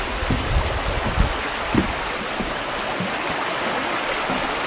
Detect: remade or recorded recorded